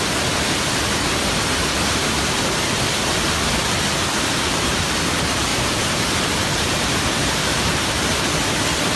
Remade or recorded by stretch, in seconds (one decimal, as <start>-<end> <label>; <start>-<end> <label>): 0.0-7.5 recorded; 7.5-8.1 remade; 8.1-9.0 recorded